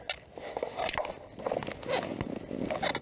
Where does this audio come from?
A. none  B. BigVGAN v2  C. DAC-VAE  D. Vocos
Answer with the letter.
A